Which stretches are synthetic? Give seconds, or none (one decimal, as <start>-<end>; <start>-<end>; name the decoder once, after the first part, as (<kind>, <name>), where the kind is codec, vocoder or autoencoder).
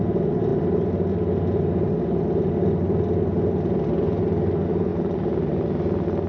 none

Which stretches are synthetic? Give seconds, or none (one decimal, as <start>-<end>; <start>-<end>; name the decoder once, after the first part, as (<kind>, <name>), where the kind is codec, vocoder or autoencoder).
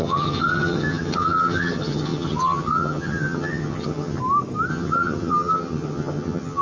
0.0-4.2 (vocoder, HiFi-GAN); 4.7-6.6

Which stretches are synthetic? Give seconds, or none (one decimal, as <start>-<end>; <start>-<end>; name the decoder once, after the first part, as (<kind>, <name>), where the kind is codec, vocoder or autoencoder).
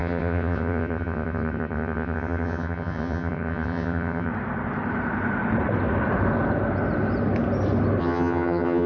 0.0-4.3 (vocoder, HiFi-GAN); 8.0-8.9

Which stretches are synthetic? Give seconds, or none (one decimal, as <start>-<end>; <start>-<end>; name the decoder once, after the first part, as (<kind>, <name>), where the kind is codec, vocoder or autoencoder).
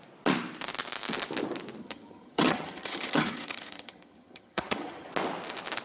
1.8-5.1 (vocoder, HiFi-GAN)